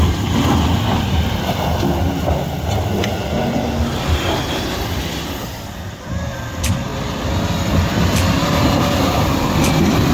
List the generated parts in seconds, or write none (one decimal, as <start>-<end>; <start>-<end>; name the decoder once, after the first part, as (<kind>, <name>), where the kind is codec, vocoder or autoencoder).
none

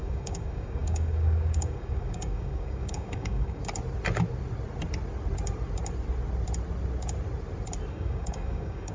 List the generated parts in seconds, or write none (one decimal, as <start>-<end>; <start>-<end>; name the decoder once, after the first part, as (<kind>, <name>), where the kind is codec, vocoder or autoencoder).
0.0-3.6 (codec, DAC); 7.9-8.9

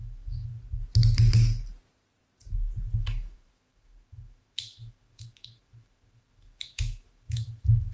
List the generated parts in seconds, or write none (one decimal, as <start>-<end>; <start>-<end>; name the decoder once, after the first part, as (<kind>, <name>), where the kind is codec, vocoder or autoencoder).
0.0-0.5 (autoencoder, DAC-VAE); 3.0-7.9

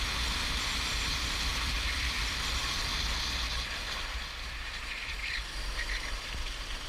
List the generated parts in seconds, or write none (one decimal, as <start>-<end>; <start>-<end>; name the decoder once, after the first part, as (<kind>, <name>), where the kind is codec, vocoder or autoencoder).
1.5-2.3 (vocoder, BigVGAN v2)

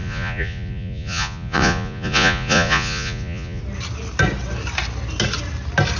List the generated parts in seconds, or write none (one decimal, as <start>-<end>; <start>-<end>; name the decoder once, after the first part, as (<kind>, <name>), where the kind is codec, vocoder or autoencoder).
0.0-3.6 (vocoder, Vocos)

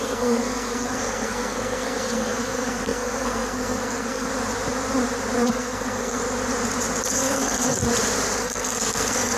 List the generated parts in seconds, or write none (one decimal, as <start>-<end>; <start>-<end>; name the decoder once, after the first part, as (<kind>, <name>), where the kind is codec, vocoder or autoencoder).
0.0-4.3 (codec, SNAC); 5.5-6.2; 7.1-7.8; 8.4-9.4

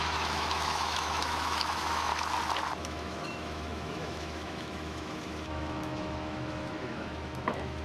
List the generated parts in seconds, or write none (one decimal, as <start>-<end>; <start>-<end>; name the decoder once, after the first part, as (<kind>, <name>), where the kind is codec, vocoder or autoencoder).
0.0-2.1 (autoencoder, DAC-VAE); 2.8-7.8

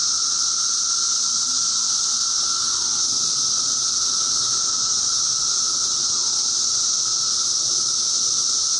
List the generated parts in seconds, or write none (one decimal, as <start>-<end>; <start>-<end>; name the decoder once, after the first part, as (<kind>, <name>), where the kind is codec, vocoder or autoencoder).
none